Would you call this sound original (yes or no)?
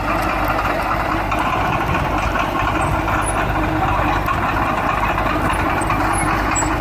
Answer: yes